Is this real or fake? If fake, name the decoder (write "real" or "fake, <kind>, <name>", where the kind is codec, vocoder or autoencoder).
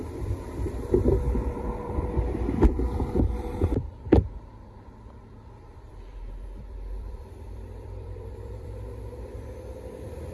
fake, vocoder, BigVGAN v2